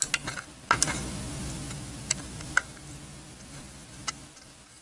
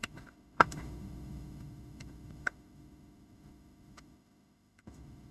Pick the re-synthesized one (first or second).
second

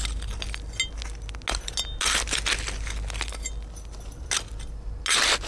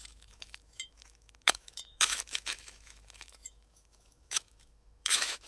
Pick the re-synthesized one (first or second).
second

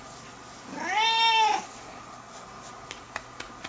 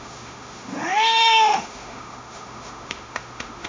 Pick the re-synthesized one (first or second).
second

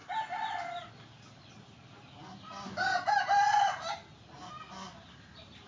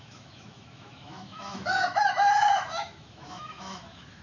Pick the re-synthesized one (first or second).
second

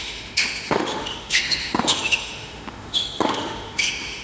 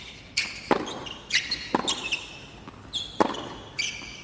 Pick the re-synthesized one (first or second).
first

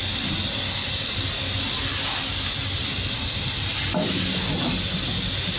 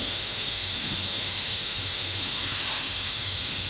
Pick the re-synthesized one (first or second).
second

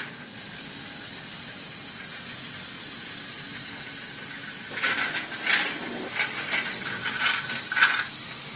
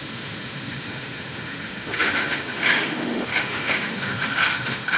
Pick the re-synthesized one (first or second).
second